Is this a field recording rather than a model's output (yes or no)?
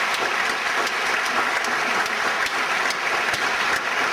no